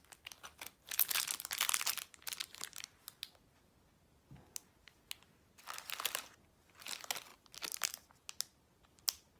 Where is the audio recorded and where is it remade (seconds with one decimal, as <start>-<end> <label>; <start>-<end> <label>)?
0.0-9.4 recorded